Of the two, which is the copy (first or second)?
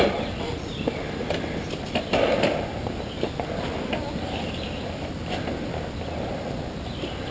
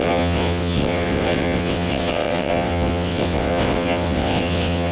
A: second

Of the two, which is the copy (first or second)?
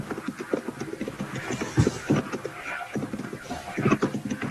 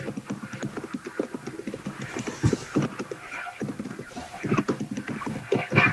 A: second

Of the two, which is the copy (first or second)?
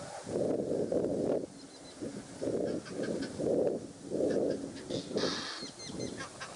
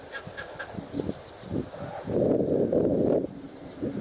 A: second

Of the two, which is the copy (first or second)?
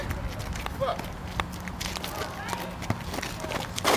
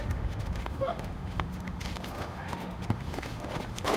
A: second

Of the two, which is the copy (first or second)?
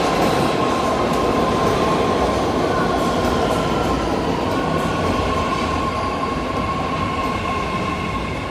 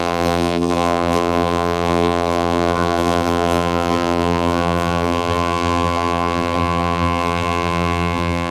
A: second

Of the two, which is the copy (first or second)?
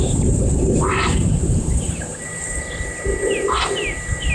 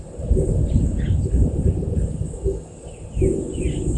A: first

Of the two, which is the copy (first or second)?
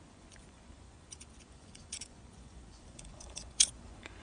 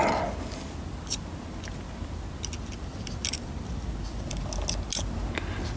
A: first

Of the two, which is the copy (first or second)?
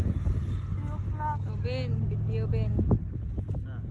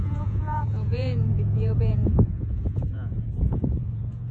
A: second